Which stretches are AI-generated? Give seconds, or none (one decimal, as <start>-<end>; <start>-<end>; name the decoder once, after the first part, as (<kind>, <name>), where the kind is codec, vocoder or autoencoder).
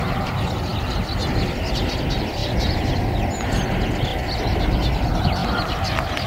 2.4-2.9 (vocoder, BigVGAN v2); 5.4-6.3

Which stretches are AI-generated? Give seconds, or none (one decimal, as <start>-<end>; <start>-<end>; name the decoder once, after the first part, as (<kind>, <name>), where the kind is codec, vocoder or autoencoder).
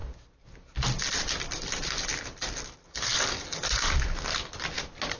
2.1-3.1 (vocoder, BigVGAN v2); 3.5-4.3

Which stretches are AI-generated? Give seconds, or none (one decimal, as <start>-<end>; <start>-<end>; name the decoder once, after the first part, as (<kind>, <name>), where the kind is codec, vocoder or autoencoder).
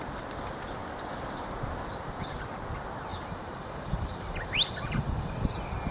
3.1-5.9 (vocoder, BigVGAN v2)